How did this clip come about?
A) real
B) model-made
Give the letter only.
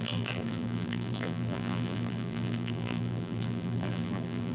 B